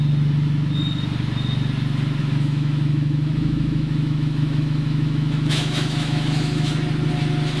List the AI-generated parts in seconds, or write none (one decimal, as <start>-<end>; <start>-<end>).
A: 2.2-6.7